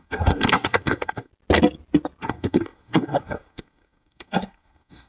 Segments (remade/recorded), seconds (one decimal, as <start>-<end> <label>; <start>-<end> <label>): 0.0-1.3 remade; 1.3-2.2 recorded; 2.2-5.1 remade